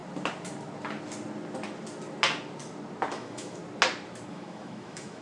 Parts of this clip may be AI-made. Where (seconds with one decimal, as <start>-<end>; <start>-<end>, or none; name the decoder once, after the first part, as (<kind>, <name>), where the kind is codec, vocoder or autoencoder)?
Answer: 3.1-3.6 (autoencoder, DAC-VAE); 4.3-5.2